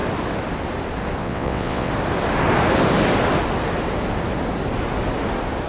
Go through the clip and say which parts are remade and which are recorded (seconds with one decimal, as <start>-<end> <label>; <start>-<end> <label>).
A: 0.0-1.2 recorded; 1.2-1.9 remade; 1.9-5.7 recorded